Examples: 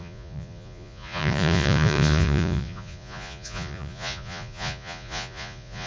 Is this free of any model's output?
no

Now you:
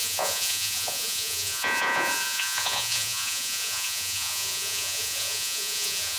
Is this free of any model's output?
no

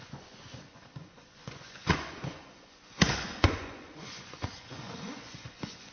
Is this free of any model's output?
no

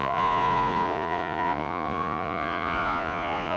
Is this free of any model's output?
no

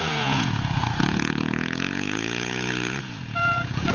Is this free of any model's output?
no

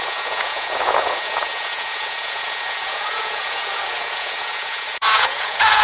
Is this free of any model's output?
no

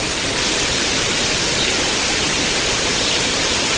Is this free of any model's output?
yes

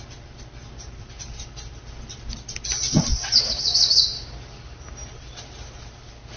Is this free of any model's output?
yes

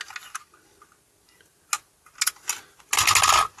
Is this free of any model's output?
yes